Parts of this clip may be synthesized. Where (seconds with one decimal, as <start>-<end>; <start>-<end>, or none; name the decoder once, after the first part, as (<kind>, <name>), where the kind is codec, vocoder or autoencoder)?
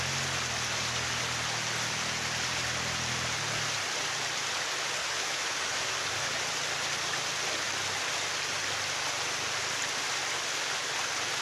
5.0-5.9 (autoencoder, DAC-VAE)